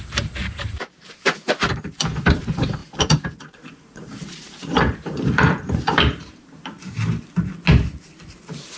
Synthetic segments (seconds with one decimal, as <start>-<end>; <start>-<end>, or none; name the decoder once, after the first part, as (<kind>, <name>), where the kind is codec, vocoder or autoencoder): 0.4-2.4 (vocoder, BigVGAN v2); 2.8-7.3